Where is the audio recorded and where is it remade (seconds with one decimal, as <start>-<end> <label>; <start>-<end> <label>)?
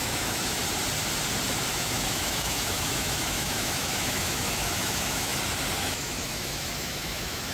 0.0-0.6 remade; 0.6-1.7 recorded; 1.7-5.3 remade; 5.3-5.8 recorded; 5.8-7.5 remade